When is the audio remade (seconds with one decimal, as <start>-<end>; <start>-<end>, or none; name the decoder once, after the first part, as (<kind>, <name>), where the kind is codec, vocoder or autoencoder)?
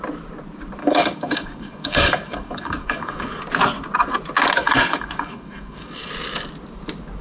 0.8-3.4 (codec, DAC); 4.6-6.1